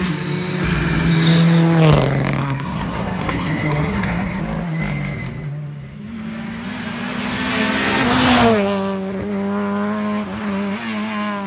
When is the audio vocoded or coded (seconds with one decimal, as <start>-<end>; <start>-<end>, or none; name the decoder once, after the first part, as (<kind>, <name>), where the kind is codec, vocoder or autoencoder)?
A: 2.4-4.4 (codec, SNAC)